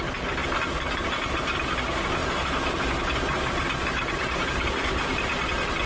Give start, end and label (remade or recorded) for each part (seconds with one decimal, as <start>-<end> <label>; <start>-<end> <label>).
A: 0.0-5.9 recorded